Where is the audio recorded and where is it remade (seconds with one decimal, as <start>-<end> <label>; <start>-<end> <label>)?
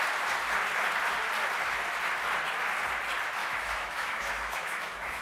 0.0-3.4 recorded; 3.4-5.2 remade